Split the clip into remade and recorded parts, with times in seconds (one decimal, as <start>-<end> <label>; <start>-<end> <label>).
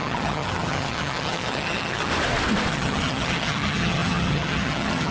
0.0-2.1 remade; 2.1-2.7 recorded; 2.7-5.1 remade